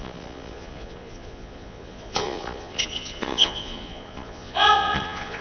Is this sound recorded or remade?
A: remade